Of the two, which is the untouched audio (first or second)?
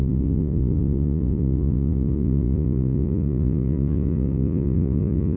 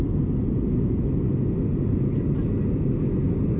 second